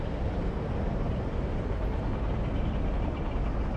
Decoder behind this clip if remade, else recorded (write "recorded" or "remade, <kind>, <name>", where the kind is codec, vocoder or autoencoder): recorded